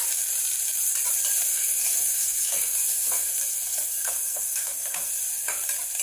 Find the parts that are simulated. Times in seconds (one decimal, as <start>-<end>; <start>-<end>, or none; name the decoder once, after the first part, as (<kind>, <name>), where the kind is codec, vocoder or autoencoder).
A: 1.5-5.1 (codec, SNAC)

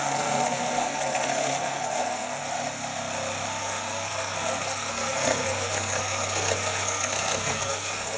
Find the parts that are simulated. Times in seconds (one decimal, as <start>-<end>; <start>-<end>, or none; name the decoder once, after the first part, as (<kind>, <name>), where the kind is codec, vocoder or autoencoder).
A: 0.0-2.4 (codec, SNAC); 3.6-8.2

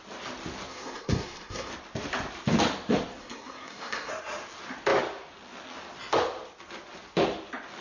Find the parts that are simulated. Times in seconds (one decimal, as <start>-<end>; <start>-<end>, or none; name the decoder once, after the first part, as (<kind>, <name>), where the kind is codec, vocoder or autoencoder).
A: 0.7-1.7 (codec, SNAC); 3.2-4.1

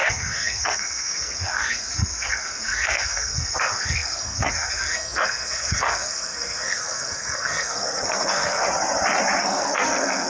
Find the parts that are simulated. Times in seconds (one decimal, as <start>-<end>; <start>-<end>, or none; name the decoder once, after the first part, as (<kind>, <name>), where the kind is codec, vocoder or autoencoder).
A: 0.0-8.7 (codec, SNAC); 9.4-10.3

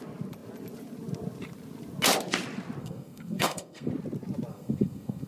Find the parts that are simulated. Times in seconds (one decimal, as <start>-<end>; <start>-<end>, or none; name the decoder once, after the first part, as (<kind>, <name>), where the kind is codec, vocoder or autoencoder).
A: 2.8-3.9 (codec, SNAC); 4.5-5.3

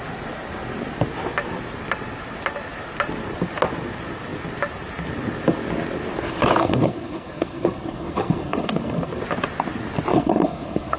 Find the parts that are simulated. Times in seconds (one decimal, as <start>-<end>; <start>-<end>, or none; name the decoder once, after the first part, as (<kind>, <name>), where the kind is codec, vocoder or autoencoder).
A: 6.6-9.2 (codec, SNAC); 10.1-11.0

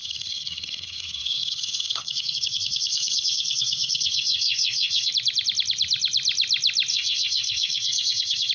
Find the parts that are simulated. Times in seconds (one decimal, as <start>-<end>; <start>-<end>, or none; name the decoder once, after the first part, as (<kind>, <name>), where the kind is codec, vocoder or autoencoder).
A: 0.0-5.1 (codec, SNAC); 6.9-8.5